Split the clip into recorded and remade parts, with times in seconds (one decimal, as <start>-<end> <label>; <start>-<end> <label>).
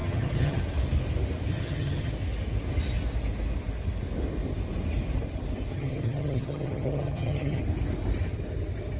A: 0.0-0.6 remade; 0.6-1.5 recorded; 1.5-2.1 remade; 2.1-5.7 recorded; 5.7-7.6 remade; 7.6-9.0 recorded